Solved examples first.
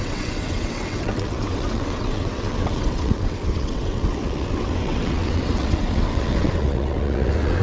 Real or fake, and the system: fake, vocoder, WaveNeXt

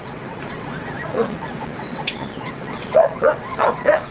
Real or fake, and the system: fake, vocoder, WaveNeXt